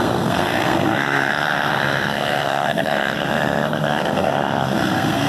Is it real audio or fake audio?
fake